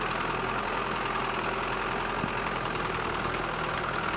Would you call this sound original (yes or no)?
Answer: yes